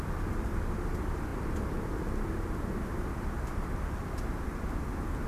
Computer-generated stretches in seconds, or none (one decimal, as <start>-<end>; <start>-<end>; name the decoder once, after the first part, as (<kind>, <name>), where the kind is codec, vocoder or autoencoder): none